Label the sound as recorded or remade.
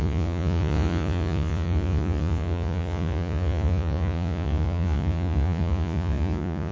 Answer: remade